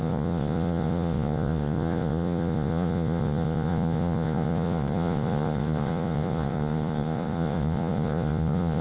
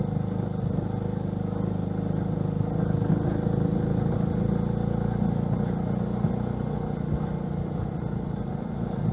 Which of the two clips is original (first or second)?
second